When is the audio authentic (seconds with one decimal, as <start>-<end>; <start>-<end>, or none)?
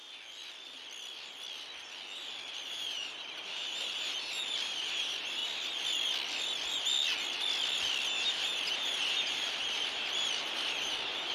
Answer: 0.0-2.5; 5.4-8.1